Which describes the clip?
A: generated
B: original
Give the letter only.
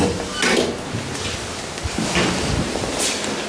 B